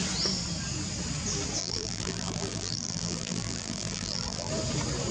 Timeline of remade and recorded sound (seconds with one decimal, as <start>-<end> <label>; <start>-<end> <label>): 0.0-1.6 recorded; 1.6-4.5 remade; 4.5-5.1 recorded